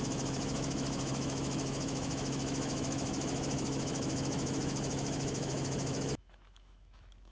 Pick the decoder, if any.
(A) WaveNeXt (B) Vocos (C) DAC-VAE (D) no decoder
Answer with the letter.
C